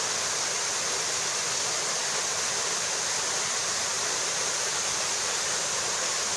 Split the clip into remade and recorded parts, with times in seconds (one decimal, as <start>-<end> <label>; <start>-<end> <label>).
0.0-6.4 recorded